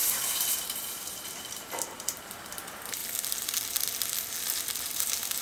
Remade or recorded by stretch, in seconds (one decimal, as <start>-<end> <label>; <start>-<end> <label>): 0.0-3.0 remade; 3.0-4.8 recorded; 4.8-5.4 remade